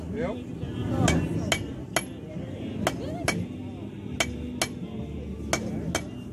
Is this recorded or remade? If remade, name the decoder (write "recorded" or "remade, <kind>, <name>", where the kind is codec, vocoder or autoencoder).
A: recorded